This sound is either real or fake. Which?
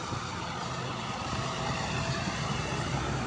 real